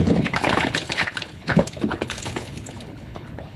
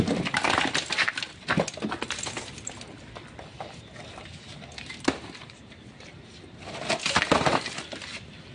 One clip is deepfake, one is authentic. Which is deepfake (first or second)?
first